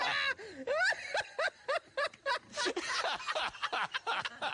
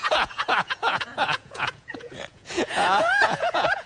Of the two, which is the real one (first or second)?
first